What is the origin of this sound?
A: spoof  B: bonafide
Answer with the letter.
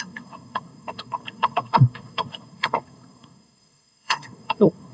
A